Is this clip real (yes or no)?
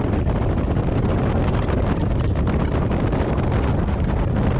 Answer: yes